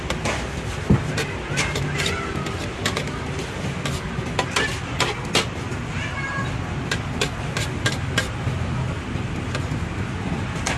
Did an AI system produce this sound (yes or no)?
no